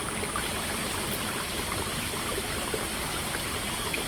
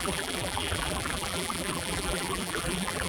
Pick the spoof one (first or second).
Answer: second